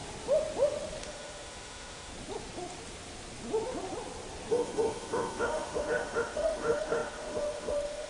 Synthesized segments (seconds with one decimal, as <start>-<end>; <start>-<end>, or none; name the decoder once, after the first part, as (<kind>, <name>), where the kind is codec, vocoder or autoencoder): 1.0-2.1 (autoencoder, DAC-VAE); 4.5-8.1